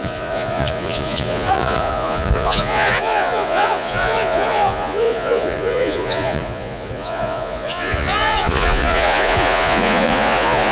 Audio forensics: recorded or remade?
remade